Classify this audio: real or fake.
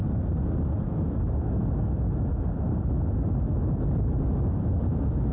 real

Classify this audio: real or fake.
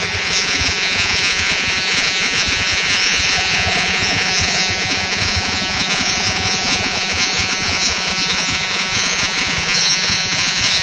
fake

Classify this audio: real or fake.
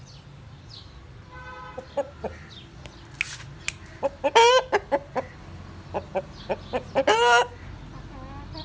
real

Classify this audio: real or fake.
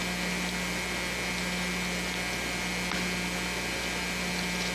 real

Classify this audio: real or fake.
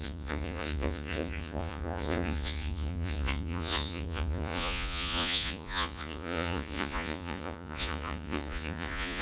fake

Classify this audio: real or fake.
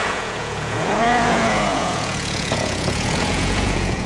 fake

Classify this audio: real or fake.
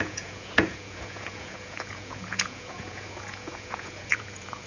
fake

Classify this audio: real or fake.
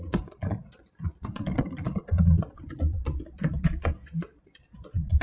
fake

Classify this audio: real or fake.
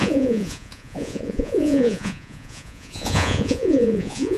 fake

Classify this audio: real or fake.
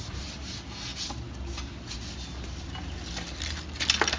real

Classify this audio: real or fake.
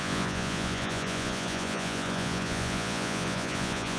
fake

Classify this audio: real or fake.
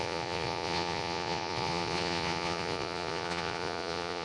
fake